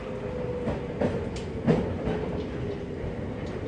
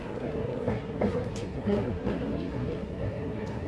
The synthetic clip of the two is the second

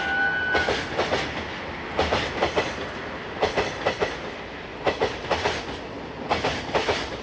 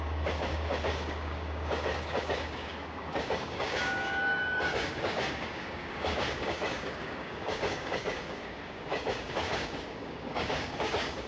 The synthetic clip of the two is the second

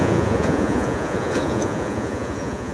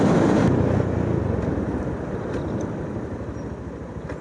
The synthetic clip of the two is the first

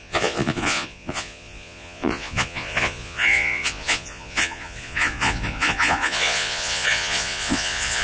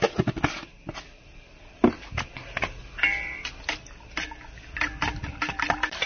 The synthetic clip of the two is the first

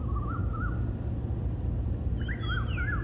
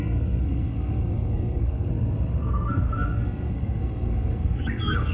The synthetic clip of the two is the second